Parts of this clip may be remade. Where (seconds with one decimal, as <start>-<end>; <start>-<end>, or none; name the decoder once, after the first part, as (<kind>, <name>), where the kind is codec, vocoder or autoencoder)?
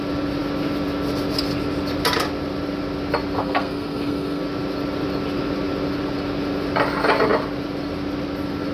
3.4-4.4 (codec, SNAC)